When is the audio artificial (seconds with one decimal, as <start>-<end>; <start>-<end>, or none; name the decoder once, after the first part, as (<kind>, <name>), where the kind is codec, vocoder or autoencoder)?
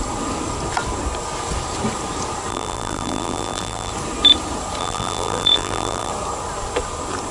2.5-3.9 (vocoder, BigVGAN v2); 4.8-6.1